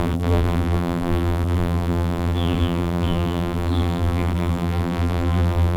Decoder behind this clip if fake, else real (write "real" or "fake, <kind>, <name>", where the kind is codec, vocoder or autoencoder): fake, vocoder, BigVGAN v2